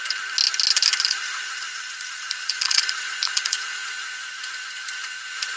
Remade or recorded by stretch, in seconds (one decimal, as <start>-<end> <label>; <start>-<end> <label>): 0.0-1.0 recorded; 1.0-3.8 remade; 3.8-5.6 recorded